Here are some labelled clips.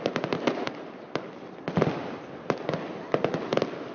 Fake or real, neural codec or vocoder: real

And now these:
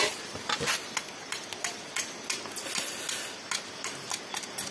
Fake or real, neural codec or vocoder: real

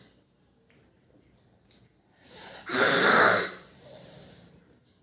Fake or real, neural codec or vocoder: fake, vocoder, BigVGAN v2